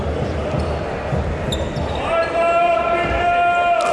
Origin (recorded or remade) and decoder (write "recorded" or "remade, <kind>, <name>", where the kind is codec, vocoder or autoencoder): recorded